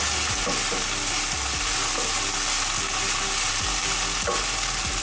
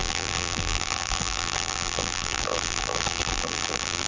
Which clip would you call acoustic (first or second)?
first